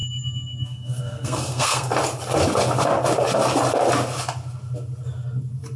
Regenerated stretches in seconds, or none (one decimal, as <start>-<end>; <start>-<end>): 0.0-1.9